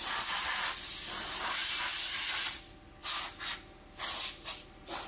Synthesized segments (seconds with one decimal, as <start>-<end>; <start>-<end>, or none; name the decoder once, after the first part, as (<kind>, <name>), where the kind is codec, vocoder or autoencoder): none